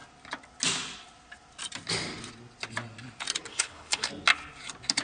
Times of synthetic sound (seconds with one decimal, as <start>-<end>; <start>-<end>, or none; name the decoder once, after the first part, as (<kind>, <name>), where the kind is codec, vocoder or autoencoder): 3.5-4.1 (codec, HILCodec)